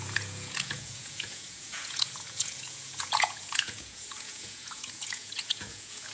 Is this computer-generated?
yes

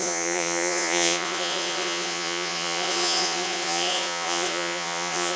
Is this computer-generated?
yes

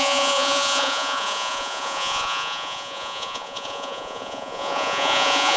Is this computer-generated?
yes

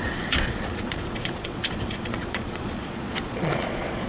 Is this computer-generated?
yes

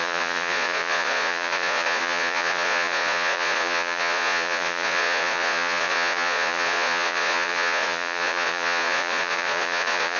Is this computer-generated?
yes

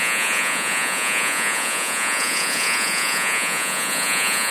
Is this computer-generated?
yes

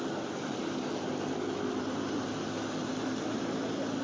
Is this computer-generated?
no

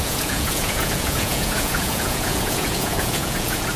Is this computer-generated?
yes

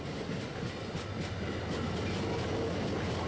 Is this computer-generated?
no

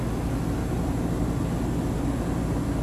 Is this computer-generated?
no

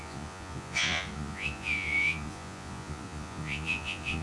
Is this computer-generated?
yes